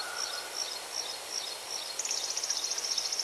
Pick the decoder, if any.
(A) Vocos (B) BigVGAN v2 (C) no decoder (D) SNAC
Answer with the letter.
C